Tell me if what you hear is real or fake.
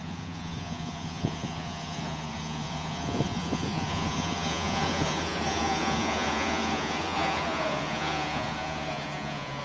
fake